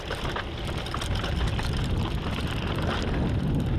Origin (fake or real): real